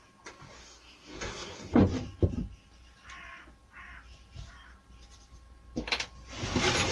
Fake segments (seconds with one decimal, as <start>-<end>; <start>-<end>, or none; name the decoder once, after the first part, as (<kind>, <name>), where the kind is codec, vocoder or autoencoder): 0.6-1.8 (codec, SNAC)